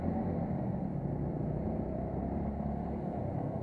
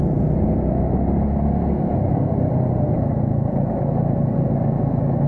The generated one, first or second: first